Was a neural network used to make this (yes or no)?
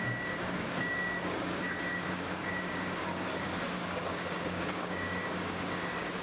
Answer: yes